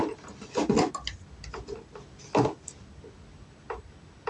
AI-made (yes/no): no